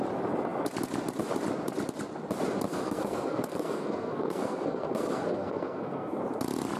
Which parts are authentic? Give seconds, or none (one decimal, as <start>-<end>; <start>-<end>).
0.0-2.7; 6.2-6.8